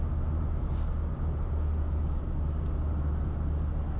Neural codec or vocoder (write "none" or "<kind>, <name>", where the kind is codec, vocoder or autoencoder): none